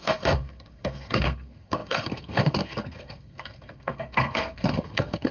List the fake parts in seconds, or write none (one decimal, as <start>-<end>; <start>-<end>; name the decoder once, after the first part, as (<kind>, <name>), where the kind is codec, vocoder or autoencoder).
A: 0.0-5.3 (codec, SNAC)